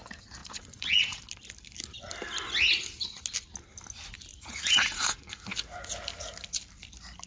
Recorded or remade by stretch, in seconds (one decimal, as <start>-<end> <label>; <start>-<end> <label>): 0.0-0.4 recorded; 0.4-1.2 remade; 1.2-4.3 recorded; 4.3-5.4 remade; 5.4-7.3 recorded